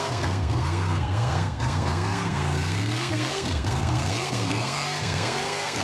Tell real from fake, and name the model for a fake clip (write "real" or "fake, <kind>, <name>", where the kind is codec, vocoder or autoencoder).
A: fake, codec, SNAC